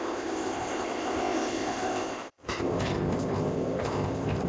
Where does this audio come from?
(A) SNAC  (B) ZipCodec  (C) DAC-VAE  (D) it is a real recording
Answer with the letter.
B